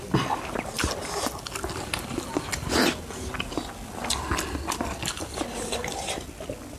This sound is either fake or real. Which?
fake